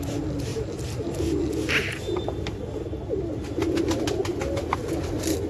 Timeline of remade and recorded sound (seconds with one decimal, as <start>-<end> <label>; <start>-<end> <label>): 0.0-5.5 recorded